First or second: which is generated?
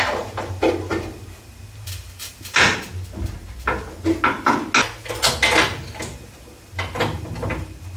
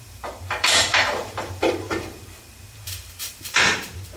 second